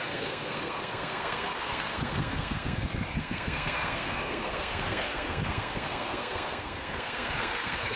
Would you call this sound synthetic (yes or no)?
yes